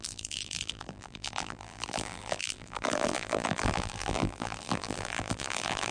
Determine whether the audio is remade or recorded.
remade